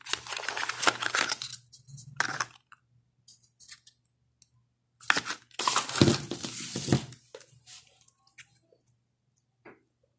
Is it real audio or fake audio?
real